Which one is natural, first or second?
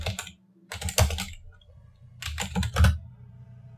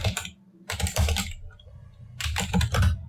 first